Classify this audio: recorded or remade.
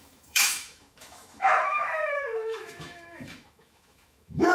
remade